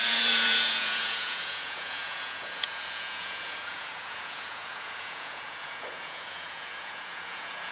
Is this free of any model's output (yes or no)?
no